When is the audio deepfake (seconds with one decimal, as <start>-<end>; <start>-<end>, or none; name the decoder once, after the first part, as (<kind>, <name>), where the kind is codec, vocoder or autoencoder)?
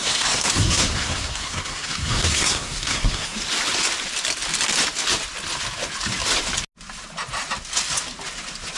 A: 0.0-3.4 (codec, SNAC)